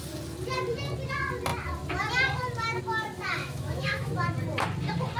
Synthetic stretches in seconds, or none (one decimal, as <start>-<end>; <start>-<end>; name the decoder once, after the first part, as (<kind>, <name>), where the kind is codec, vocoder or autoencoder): 3.4-4.1 (autoencoder, DAC-VAE)

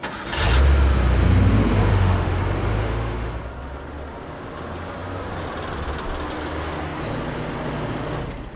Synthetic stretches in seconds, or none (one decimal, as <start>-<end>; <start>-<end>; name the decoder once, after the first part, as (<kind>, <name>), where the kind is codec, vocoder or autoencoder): 1.9-2.4 (autoencoder, DAC-VAE); 2.8-3.3

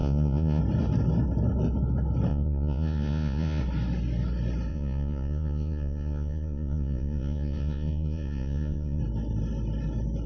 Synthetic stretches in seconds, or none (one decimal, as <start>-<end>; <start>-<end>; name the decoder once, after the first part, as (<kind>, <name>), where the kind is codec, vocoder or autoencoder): 0.0-0.6 (vocoder, Vocos); 2.3-3.6; 4.7-9.0

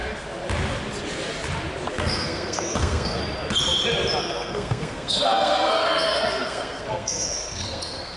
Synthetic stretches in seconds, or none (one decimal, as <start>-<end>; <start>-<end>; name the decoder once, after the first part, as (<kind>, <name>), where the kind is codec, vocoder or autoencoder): 1.9-3.2 (codec, SNAC); 4.2-8.2

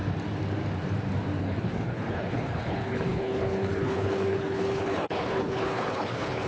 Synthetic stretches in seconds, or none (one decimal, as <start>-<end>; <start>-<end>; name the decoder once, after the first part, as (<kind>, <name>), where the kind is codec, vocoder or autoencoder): 1.4-6.5 (codec, HILCodec)

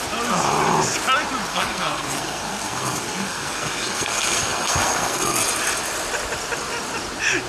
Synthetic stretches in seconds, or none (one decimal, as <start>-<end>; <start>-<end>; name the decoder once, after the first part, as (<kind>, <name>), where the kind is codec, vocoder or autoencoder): 1.5-5.4 (codec, SNAC)